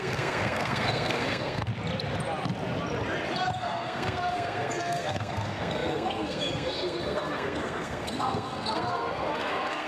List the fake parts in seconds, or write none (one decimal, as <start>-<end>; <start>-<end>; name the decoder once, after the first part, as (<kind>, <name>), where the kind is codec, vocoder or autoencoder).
0.0-1.7 (codec, SNAC); 3.6-9.9